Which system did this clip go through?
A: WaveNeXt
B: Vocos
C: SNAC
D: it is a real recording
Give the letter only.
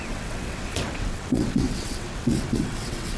A